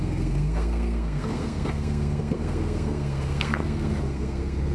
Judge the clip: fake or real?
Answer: fake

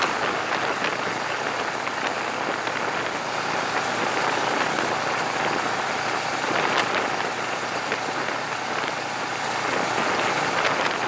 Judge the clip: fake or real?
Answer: real